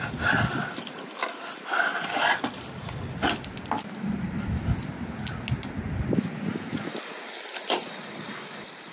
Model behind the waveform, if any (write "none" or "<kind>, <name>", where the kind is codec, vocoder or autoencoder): none